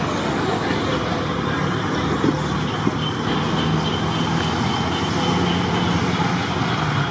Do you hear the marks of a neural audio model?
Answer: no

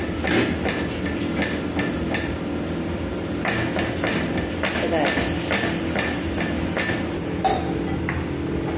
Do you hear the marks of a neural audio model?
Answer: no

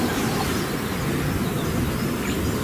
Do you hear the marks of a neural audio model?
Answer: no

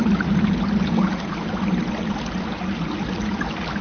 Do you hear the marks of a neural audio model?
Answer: no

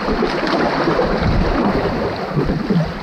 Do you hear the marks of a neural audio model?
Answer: yes